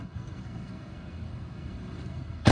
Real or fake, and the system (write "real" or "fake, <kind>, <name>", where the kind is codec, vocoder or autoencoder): fake, codec, SNAC